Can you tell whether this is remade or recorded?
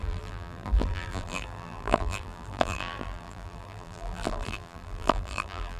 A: remade